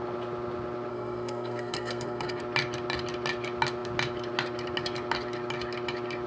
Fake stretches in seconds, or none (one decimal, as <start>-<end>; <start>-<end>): 0.9-2.4